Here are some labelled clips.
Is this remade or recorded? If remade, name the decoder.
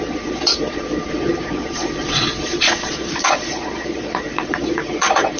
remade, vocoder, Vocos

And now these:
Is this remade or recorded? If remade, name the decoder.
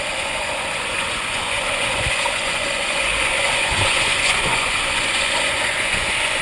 remade, vocoder, Vocos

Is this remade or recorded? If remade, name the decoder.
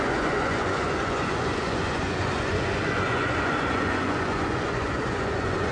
remade, vocoder, Vocos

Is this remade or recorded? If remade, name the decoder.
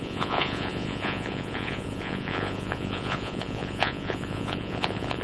remade, vocoder, Vocos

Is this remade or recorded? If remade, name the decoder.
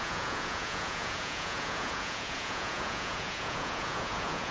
remade, vocoder, Vocos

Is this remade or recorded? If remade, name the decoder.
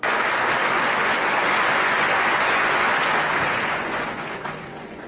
remade, vocoder, Vocos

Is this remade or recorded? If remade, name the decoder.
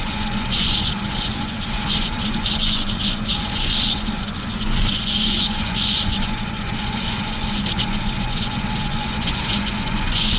remade, vocoder, Vocos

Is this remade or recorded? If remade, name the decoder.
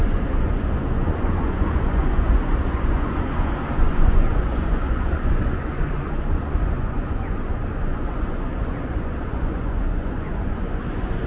remade, vocoder, Vocos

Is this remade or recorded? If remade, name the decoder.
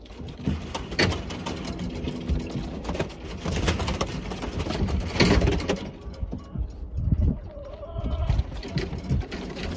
recorded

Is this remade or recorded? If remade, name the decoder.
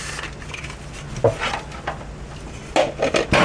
recorded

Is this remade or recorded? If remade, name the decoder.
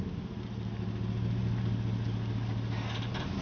recorded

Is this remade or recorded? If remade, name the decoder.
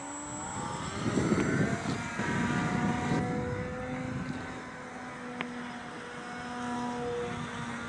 recorded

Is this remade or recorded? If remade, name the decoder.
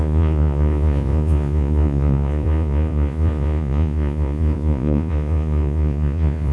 remade, vocoder, Vocos